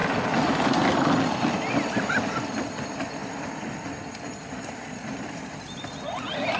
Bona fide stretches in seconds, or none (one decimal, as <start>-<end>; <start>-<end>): 0.0-6.6